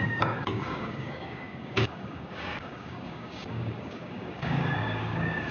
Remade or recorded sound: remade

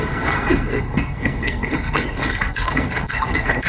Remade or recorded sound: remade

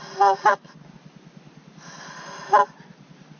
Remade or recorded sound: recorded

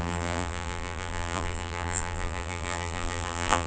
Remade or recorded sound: remade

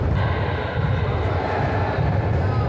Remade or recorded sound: recorded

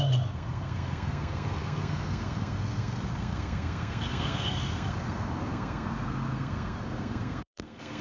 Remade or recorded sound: remade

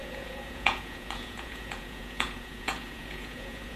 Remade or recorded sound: remade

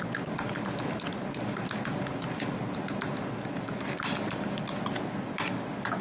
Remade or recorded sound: recorded